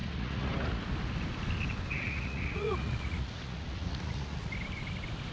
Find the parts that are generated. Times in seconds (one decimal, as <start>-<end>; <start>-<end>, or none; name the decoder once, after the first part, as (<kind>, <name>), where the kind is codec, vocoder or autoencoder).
0.0-0.8 (vocoder, Vocos); 1.9-4.5